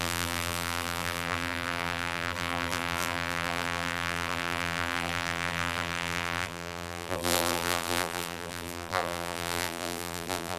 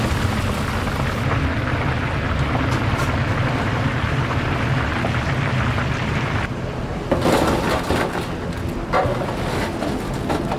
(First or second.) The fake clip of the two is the first